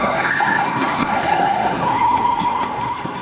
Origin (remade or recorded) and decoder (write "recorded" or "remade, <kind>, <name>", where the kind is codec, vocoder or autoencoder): remade, codec, SNAC